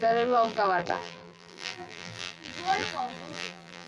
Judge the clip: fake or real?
fake